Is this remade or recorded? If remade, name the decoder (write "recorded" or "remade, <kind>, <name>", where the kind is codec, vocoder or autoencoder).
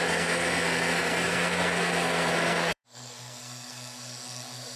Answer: remade, codec, SNAC